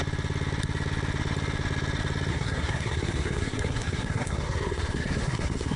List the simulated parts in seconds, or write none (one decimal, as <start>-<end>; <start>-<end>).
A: 2.3-5.8